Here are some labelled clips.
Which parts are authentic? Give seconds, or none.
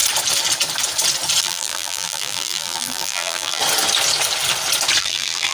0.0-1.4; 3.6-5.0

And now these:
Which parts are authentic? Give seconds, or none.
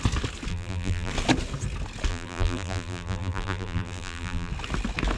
0.0-0.5; 1.1-2.1; 4.5-5.2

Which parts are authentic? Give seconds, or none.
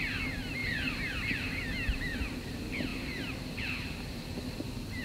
0.0-0.6; 1.3-2.9; 4.4-5.0